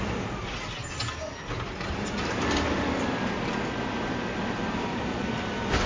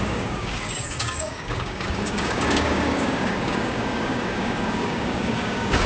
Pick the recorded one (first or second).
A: first